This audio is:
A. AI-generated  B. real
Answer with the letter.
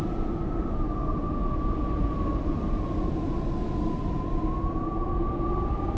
B